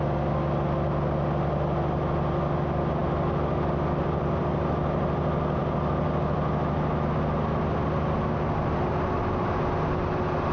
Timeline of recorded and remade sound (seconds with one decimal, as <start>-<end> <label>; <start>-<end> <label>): 0.0-10.5 recorded